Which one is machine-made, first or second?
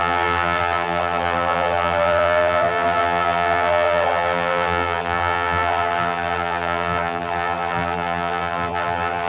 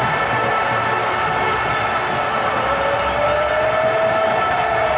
first